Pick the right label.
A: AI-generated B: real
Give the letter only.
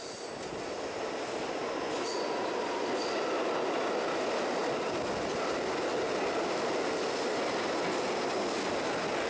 B